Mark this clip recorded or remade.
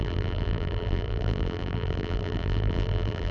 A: remade